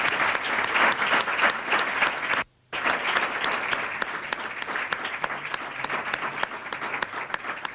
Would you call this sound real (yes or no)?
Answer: yes